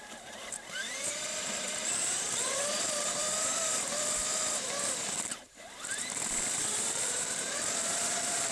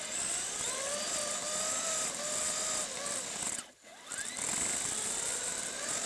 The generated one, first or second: first